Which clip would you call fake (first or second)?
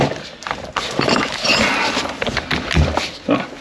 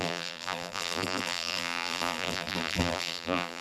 second